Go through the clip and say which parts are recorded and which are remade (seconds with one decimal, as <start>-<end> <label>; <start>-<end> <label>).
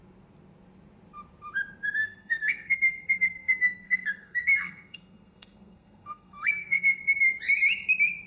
0.0-2.0 recorded; 2.0-7.0 remade; 7.0-8.3 recorded